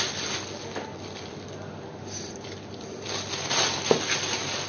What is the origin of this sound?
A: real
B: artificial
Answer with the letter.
A